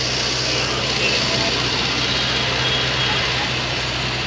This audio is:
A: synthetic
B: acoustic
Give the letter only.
B